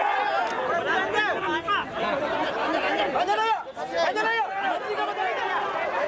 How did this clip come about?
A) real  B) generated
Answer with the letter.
A